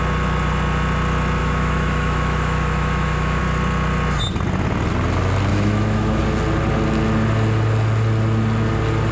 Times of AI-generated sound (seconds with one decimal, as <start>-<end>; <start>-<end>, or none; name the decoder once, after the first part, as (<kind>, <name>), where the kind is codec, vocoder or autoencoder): 1.4-3.4 (autoencoder, DAC-VAE); 5.5-6.2